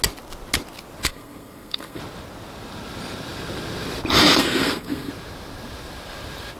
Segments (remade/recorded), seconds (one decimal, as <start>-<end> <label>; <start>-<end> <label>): 0.0-1.0 recorded; 1.0-2.0 remade; 2.0-4.4 recorded; 4.4-5.1 remade; 5.1-6.6 recorded